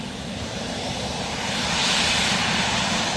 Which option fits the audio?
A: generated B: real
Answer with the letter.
A